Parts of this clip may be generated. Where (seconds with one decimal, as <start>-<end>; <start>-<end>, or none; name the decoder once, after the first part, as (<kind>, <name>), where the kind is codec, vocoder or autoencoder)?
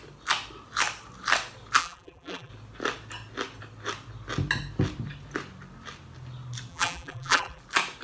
1.8-2.5 (vocoder, BigVGAN v2); 6.7-7.6